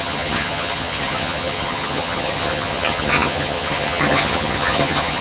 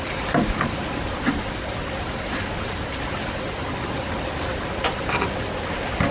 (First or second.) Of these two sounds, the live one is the second